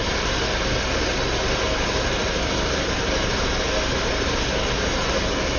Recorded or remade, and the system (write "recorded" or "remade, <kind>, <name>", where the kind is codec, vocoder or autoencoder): recorded